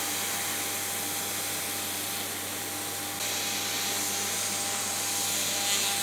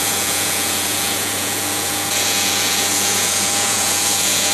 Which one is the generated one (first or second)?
second